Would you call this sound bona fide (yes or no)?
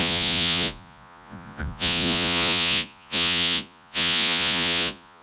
no